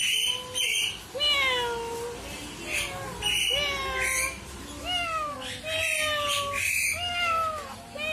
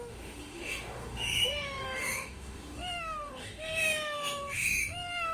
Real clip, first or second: first